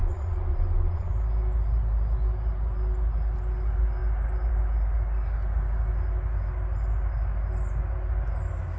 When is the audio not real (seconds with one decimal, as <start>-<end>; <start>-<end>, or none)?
0.0-1.1